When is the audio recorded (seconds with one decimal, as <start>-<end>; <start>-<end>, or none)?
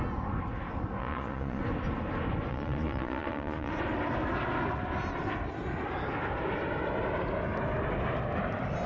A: 0.0-1.0; 1.6-2.5; 3.7-8.9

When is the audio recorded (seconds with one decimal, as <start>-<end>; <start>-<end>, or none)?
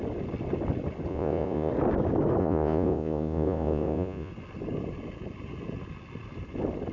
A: 0.0-1.1; 1.7-2.4; 4.3-6.9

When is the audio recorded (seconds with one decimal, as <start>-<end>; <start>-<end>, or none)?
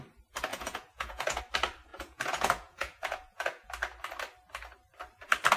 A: 0.0-0.5; 1.4-1.9; 3.7-5.6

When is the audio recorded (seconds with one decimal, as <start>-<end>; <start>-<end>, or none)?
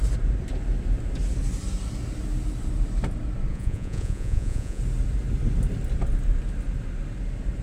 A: 0.0-3.5; 4.8-7.6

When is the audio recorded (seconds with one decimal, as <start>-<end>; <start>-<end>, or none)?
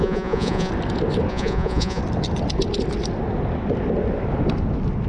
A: 0.7-1.3; 2.0-5.1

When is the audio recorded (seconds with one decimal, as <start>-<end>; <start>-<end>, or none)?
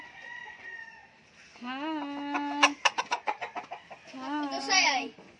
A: 1.0-3.0; 3.4-4.5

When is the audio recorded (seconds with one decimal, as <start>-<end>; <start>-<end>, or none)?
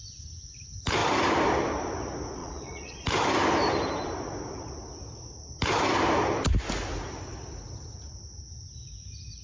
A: 0.0-2.4; 3.0-9.4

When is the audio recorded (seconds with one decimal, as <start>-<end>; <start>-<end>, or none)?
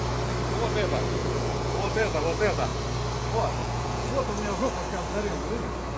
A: 0.0-1.2; 2.2-3.6; 4.1-6.0